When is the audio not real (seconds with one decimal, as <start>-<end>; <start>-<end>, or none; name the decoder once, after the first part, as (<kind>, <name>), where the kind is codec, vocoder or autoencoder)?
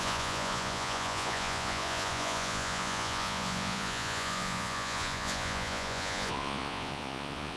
0.0-7.6 (vocoder, Vocos)